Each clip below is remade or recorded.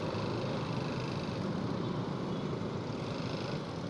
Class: recorded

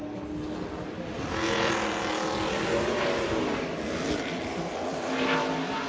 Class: recorded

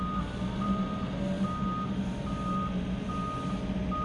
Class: recorded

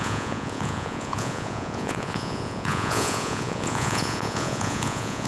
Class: remade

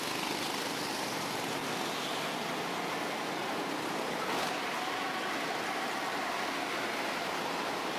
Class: recorded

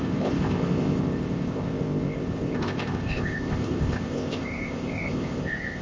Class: remade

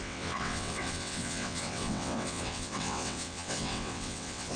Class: remade